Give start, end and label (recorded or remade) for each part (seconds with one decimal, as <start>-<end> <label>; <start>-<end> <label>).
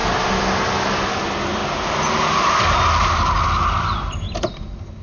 0.0-5.0 recorded